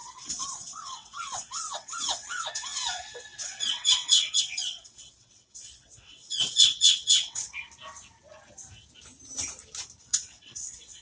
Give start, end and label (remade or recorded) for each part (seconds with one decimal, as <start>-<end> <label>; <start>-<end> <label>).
0.0-7.4 remade; 7.4-10.0 recorded; 10.0-11.0 remade